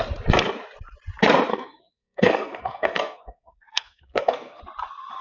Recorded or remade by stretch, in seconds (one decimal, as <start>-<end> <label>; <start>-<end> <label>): 0.0-1.5 recorded; 1.5-4.6 remade; 4.6-5.2 recorded